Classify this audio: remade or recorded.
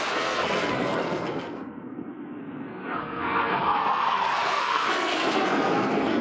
remade